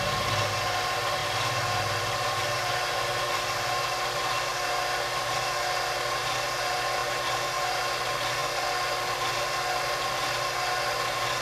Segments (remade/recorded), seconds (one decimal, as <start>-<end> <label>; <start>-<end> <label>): 0.0-11.4 recorded